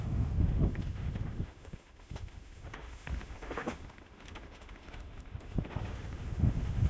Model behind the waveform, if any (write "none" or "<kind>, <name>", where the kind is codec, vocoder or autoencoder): autoencoder, DAC-VAE